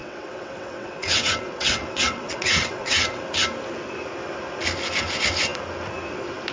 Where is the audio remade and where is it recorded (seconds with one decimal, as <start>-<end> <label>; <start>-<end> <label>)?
0.0-3.2 remade; 3.2-6.5 recorded

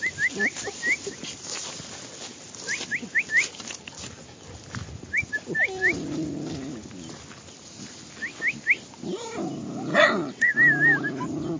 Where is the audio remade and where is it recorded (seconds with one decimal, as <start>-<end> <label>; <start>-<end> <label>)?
0.0-9.9 recorded; 9.9-10.5 remade; 10.5-11.6 recorded

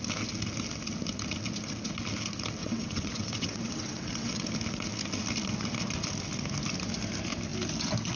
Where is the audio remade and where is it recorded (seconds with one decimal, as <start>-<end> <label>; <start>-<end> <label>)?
0.0-2.6 recorded; 2.6-4.4 remade; 4.4-8.2 recorded